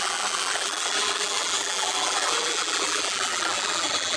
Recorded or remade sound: remade